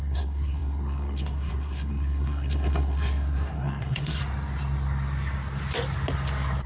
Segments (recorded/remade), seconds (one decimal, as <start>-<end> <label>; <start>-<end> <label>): 0.0-4.2 remade; 4.2-6.7 recorded